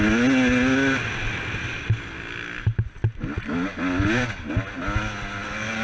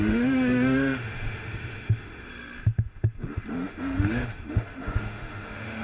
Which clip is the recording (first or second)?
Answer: first